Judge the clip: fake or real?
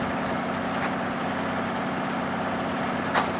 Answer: real